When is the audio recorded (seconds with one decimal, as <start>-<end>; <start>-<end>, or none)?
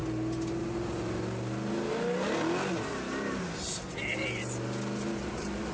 0.0-5.7